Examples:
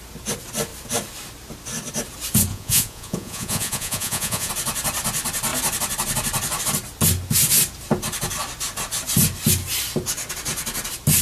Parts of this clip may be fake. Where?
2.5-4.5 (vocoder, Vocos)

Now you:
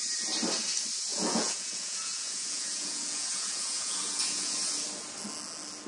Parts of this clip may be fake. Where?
1.1-4.6 (vocoder, Vocos)

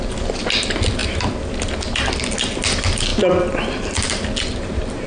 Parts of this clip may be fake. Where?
none